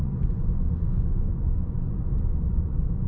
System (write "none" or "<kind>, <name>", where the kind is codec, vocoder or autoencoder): vocoder, Vocos